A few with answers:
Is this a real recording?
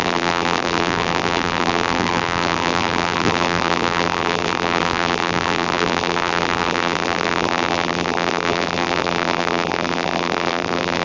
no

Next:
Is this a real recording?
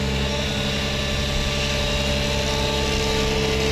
yes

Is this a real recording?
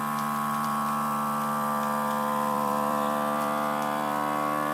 no